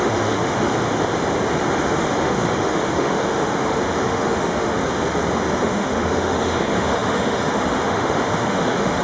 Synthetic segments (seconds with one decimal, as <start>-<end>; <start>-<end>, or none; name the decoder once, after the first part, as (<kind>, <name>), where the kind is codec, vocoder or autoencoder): 0.0-0.7 (autoencoder, DAC-VAE); 1.7-4.8; 5.6-9.0